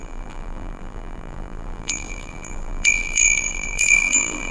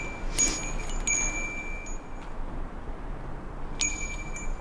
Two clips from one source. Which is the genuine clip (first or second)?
second